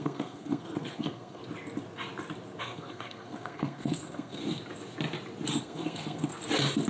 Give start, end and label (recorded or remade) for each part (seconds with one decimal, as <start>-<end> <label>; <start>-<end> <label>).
0.0-1.4 remade; 1.4-2.6 recorded; 2.6-4.4 remade; 4.4-5.6 recorded; 5.6-6.3 remade; 6.3-6.9 recorded

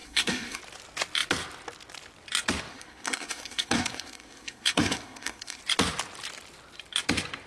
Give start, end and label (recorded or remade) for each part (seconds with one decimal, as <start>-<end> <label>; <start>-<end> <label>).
0.0-0.6 remade; 0.6-2.7 recorded; 2.7-5.6 remade; 5.6-7.5 recorded

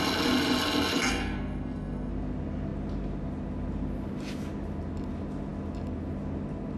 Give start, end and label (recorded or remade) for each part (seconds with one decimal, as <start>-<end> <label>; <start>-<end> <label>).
0.0-0.9 recorded; 0.9-2.1 remade; 2.1-6.8 recorded

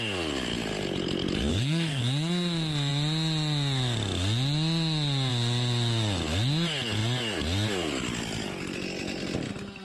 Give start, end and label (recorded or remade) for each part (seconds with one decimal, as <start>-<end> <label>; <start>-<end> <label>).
0.0-1.5 recorded; 1.5-2.0 remade; 2.0-9.8 recorded

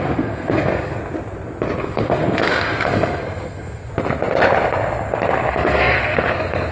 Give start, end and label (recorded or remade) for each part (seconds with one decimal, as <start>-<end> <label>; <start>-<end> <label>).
0.0-1.0 remade; 1.0-1.8 recorded; 1.8-3.9 remade; 3.9-5.5 recorded; 5.5-6.7 remade

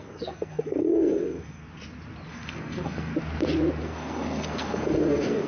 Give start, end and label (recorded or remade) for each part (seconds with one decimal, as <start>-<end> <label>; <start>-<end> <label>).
0.0-1.6 remade; 1.6-2.3 recorded; 2.3-3.1 remade; 3.1-3.8 recorded; 3.8-5.5 remade